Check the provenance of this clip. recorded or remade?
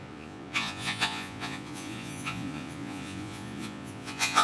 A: remade